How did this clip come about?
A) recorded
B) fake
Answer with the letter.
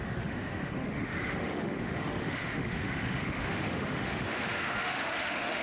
B